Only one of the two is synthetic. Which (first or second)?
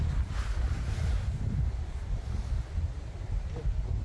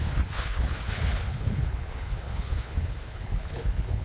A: second